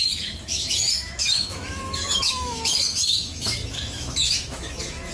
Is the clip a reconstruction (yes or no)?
yes